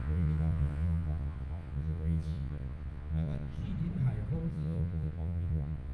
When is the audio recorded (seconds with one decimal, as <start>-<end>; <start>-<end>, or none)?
3.6-4.5